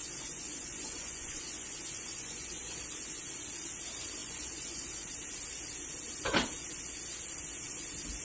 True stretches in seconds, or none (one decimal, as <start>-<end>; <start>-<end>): 2.8-4.2; 5.1-8.2